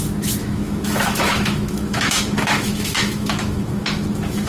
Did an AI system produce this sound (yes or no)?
yes